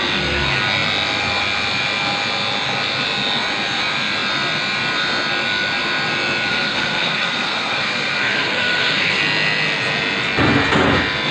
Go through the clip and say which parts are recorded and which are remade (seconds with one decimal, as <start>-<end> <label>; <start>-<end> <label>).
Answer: 0.0-6.5 recorded; 6.5-9.2 remade; 9.2-11.3 recorded